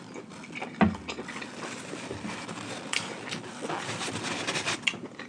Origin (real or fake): real